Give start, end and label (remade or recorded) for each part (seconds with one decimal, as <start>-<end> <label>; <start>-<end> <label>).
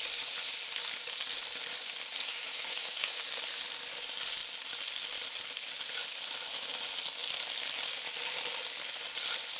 0.0-2.3 recorded; 2.3-3.2 remade; 3.2-9.6 recorded